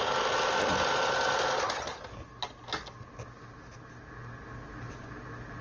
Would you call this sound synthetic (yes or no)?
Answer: no